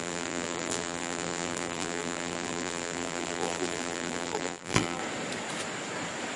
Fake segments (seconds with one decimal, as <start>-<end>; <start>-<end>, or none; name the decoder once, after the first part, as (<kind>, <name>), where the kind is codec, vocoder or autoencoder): 0.0-5.0 (vocoder, BigVGAN v2)